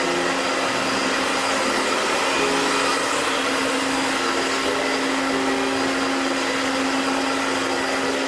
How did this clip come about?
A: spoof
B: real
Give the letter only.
B